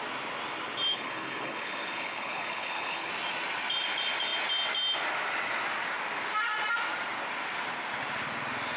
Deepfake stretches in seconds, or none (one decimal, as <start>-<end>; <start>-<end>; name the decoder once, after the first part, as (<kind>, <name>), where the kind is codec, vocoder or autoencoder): 0.9-3.1 (codec, HILCodec)